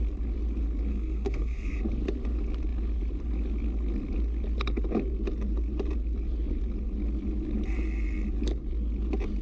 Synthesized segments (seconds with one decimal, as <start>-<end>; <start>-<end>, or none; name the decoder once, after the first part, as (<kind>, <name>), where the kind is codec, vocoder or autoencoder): 0.9-1.8 (codec, SNAC)